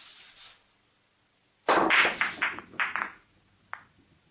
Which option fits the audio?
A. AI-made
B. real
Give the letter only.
B